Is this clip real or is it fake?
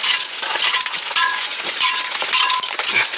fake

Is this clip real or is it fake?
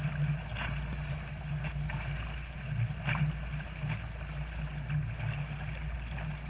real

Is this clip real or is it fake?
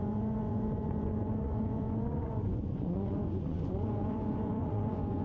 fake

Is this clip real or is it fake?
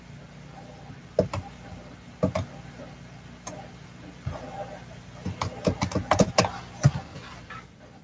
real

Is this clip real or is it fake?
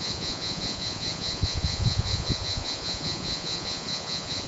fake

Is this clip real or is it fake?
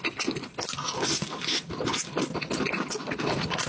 real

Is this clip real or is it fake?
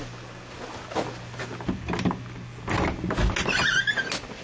real